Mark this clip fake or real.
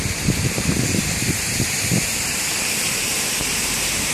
fake